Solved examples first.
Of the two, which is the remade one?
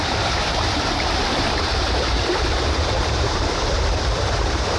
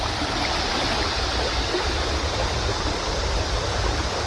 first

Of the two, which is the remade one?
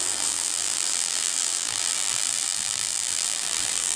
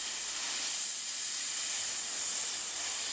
first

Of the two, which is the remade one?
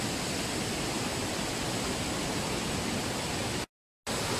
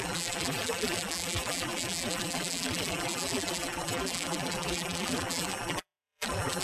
second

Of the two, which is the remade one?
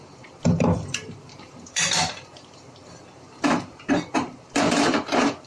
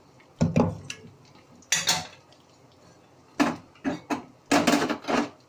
first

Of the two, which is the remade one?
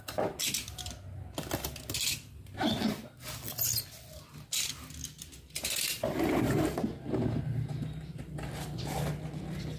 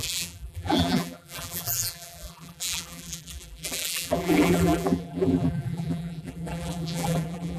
second